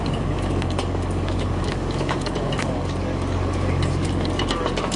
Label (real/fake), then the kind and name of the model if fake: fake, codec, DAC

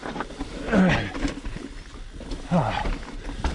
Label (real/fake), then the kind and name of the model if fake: real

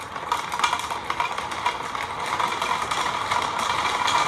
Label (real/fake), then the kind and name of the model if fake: real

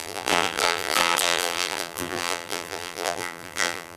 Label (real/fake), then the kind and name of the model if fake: fake, vocoder, BigVGAN v2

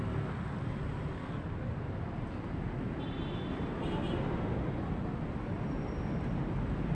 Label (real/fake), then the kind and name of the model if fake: real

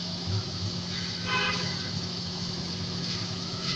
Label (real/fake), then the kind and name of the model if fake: fake, autoencoder, DAC-VAE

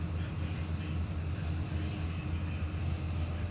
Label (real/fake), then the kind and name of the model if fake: real